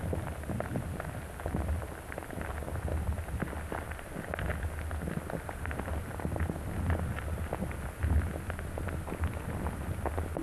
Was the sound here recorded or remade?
recorded